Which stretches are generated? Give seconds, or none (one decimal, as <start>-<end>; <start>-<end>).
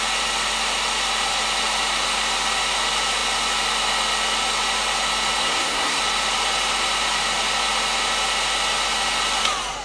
5.4-6.0